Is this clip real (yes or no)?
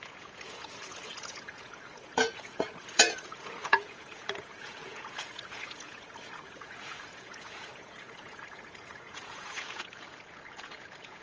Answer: no